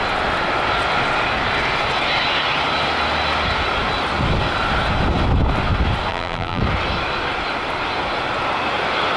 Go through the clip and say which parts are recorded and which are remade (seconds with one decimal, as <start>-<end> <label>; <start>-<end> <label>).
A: 0.0-6.1 recorded; 6.1-6.6 remade; 6.6-9.2 recorded